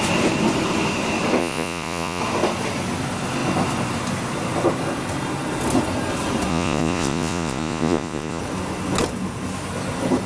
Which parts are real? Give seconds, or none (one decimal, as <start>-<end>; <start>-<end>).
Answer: 0.0-1.4; 2.2-6.5; 8.4-10.3